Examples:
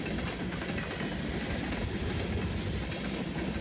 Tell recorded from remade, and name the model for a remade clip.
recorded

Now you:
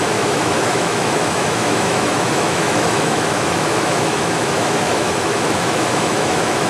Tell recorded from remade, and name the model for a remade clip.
remade, autoencoder, DAC-VAE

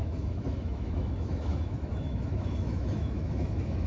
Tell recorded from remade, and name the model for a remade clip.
remade, autoencoder, DAC-VAE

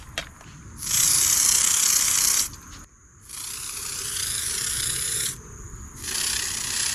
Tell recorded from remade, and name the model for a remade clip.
recorded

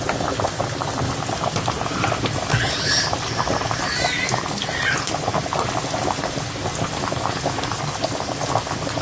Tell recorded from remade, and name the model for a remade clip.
recorded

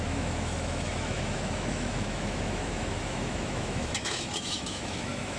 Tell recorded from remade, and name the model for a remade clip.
remade, autoencoder, DAC-VAE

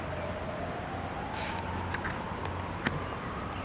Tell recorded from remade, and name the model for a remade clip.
recorded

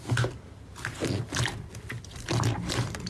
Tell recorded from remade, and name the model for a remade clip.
recorded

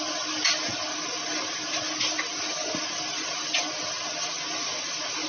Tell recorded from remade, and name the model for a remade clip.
recorded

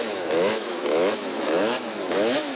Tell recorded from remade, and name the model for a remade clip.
remade, autoencoder, DAC-VAE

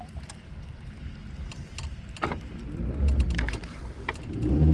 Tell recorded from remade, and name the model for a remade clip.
recorded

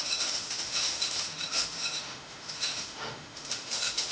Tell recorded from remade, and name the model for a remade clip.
remade, autoencoder, DAC-VAE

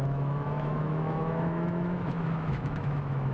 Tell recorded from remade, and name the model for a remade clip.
remade, autoencoder, DAC-VAE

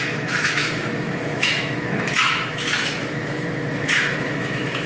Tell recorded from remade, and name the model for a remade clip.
remade, autoencoder, DAC-VAE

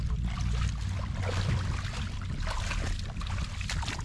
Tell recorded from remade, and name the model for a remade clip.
recorded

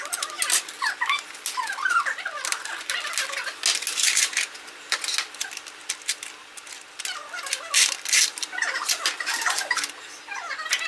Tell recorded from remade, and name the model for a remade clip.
recorded